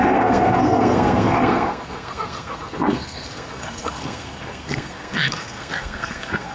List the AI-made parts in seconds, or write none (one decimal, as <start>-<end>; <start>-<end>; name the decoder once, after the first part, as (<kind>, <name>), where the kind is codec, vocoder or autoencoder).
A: 0.0-6.5 (codec, SNAC)